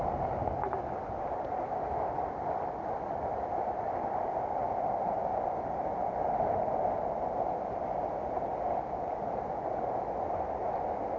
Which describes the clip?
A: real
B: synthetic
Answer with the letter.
A